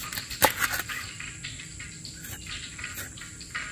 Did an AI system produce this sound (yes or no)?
no